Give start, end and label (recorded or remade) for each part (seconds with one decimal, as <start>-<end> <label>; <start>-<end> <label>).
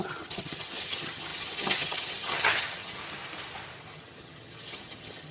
0.0-3.0 remade; 3.0-3.8 recorded; 3.8-5.3 remade